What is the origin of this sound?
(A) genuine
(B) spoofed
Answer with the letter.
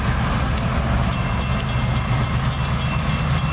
A